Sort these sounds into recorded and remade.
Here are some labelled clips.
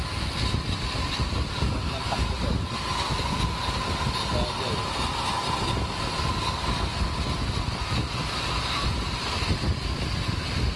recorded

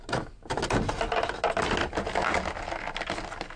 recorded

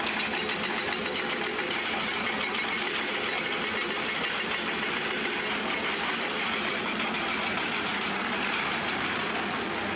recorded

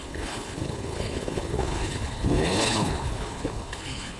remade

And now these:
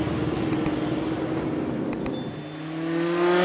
recorded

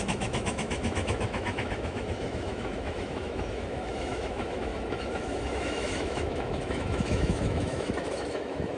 remade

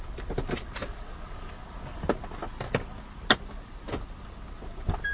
recorded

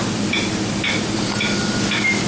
recorded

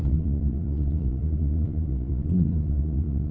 remade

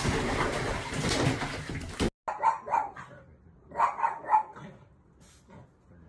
recorded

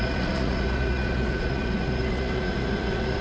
remade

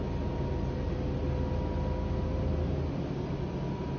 recorded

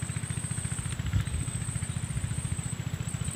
recorded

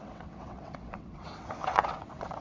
remade